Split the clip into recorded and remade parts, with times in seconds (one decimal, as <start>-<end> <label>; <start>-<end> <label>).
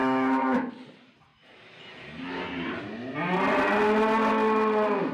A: 0.0-0.7 remade; 0.7-5.1 recorded